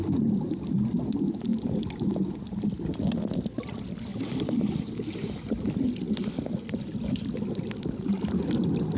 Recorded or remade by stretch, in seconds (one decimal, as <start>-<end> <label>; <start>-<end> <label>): 0.0-9.0 recorded